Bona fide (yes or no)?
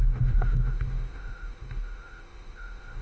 no